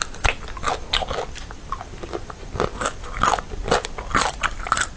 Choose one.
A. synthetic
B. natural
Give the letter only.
B